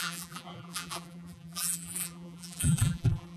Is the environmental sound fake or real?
fake